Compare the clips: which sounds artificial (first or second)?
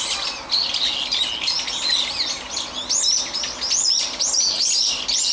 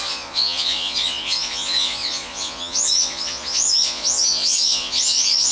second